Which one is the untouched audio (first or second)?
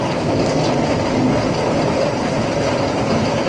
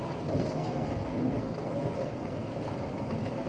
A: first